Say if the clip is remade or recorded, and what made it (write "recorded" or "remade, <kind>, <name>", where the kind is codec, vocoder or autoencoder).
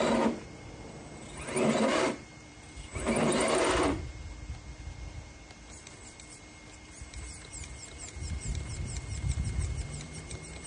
remade, vocoder, BigVGAN v2